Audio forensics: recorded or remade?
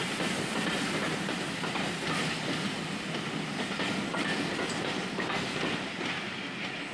recorded